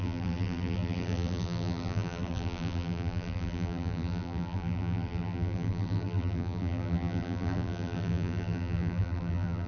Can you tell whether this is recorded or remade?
remade